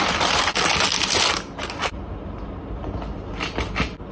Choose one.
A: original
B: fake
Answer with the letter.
A